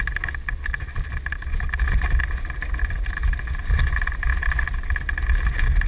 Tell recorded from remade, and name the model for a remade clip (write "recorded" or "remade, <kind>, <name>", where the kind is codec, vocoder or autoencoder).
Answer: recorded